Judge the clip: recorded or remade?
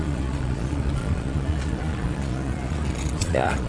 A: remade